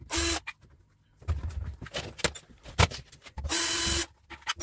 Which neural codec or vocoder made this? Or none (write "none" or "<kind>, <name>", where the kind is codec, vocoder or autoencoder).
none